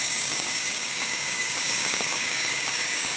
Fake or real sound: fake